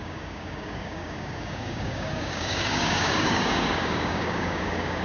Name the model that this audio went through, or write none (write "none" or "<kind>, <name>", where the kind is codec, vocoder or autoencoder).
codec, DAC